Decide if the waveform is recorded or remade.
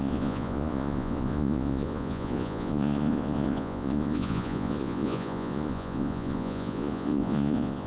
remade